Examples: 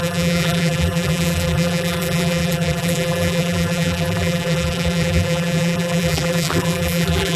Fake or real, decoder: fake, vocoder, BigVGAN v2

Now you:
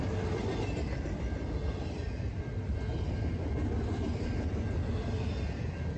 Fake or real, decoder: fake, vocoder, BigVGAN v2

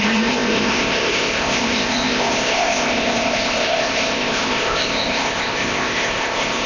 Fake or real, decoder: fake, codec, ZipCodec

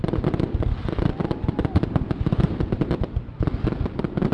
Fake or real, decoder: real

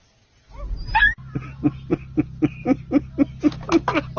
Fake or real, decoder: real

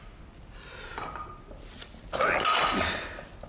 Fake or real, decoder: real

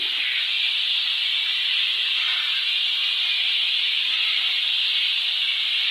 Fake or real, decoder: real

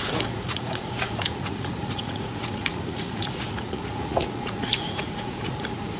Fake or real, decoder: fake, vocoder, Vocos